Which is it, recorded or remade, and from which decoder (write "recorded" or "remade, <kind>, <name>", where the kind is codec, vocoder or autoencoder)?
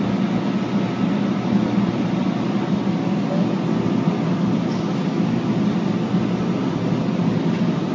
recorded